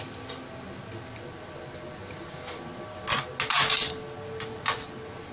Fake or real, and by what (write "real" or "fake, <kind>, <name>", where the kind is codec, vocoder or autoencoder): real